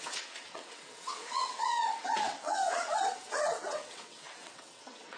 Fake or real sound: fake